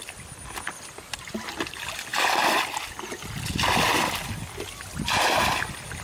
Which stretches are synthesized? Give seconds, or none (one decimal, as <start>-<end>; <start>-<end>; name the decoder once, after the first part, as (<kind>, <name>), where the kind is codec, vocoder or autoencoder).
0.0-2.1 (vocoder, BigVGAN v2)